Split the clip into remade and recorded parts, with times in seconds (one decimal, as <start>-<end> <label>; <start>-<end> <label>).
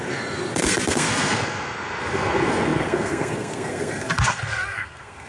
0.0-5.3 remade